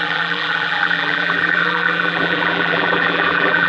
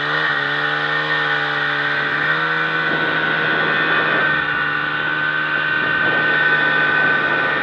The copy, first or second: first